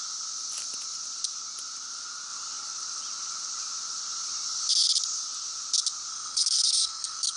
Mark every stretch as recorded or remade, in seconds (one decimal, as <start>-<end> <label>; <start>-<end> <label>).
0.0-6.1 recorded; 6.1-7.4 remade